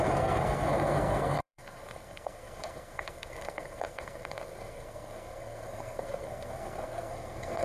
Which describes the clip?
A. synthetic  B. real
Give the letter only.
A